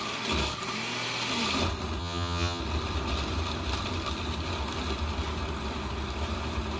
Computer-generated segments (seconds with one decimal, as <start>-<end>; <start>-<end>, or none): 2.0-2.6

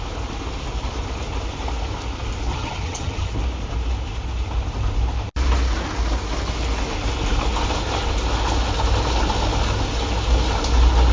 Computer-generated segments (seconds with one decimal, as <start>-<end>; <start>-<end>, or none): 2.5-3.3